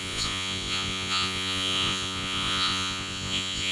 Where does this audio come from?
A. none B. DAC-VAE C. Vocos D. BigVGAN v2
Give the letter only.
C